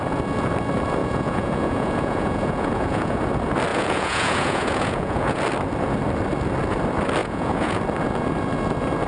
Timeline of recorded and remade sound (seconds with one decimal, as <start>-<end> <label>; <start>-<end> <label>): 0.0-1.0 recorded; 1.0-3.2 remade; 3.2-3.7 recorded; 3.7-5.4 remade; 5.4-7.2 recorded; 7.2-7.8 remade; 7.8-9.1 recorded